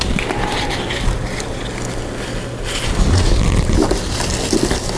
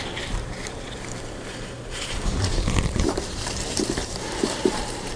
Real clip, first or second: first